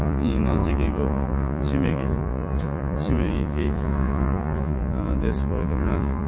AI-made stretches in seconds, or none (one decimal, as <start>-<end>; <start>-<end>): 0.0-6.3

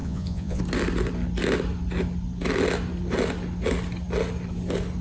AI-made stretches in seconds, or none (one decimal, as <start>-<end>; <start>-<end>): 0.0-0.6

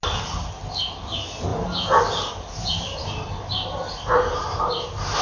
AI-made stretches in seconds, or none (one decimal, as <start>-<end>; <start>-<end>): none

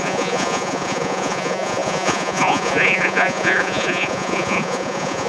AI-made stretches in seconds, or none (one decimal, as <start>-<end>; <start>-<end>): 0.0-5.3